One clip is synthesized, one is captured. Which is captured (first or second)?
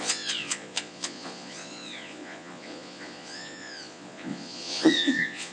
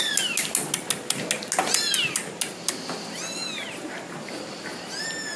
second